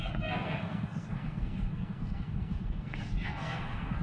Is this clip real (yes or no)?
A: no